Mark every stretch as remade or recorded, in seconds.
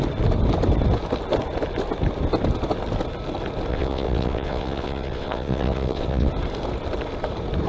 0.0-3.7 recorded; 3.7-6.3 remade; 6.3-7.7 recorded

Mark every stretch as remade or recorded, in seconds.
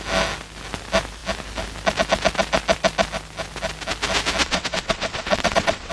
0.0-4.4 recorded; 4.4-5.9 remade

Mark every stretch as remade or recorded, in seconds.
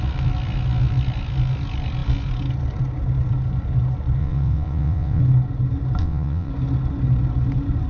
0.0-4.2 recorded; 4.2-5.2 remade; 5.2-6.0 recorded; 6.0-6.5 remade; 6.5-7.9 recorded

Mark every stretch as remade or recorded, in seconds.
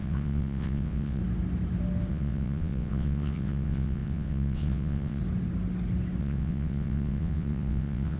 0.0-1.2 remade; 1.2-2.1 recorded; 2.1-5.2 remade; 5.2-6.2 recorded; 6.2-8.2 remade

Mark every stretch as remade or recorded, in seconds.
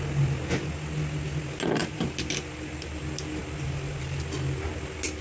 0.0-5.2 recorded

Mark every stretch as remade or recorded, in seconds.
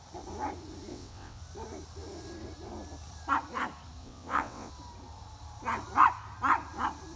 0.0-0.9 recorded; 0.9-1.4 remade; 1.4-4.0 recorded; 4.0-4.7 remade; 4.7-7.2 recorded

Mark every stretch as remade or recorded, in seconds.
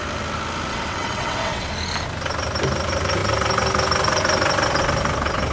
0.0-0.7 recorded; 0.7-1.7 remade; 1.7-5.5 recorded